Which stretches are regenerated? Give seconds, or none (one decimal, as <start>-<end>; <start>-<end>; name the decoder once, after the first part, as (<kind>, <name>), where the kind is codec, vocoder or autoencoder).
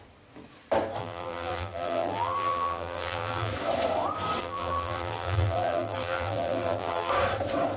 1.0-3.5 (vocoder, BigVGAN v2); 4.4-7.1